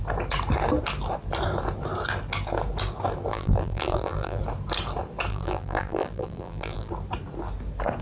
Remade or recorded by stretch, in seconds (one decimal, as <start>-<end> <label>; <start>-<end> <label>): 0.0-3.3 recorded; 3.3-4.4 remade; 4.4-5.3 recorded; 5.3-6.9 remade; 6.9-8.0 recorded